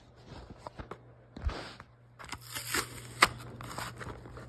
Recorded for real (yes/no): yes